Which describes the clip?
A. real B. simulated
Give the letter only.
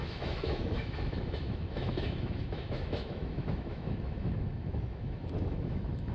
B